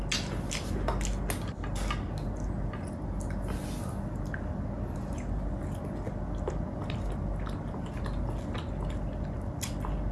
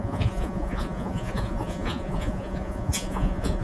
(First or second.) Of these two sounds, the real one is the first